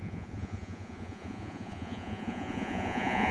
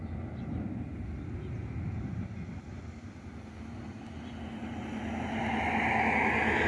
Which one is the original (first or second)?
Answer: second